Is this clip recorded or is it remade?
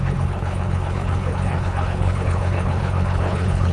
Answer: remade